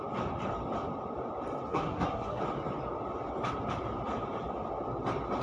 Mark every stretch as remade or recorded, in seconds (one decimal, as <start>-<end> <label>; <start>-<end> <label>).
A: 0.0-1.7 recorded; 1.7-2.4 remade; 2.4-5.4 recorded